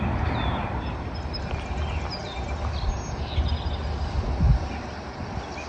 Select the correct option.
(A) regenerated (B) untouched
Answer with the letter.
B